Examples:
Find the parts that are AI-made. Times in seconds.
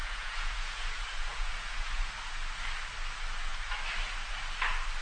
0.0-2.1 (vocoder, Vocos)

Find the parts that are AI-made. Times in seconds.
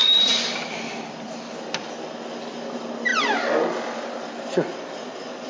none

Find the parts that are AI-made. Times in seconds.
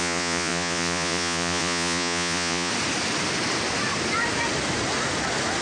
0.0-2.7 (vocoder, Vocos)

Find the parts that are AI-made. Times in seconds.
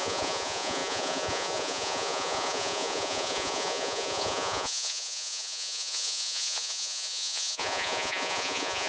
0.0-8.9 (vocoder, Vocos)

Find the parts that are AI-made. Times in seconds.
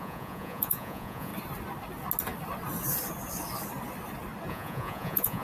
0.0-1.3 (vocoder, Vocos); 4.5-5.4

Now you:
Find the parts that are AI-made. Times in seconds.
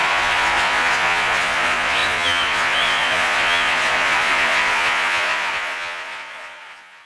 0.0-7.1 (vocoder, Vocos)